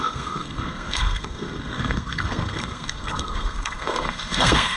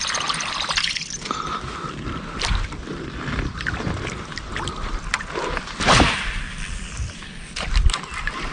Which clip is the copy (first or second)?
first